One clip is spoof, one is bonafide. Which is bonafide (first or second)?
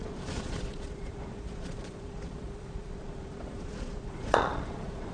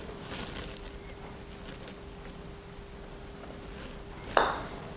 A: second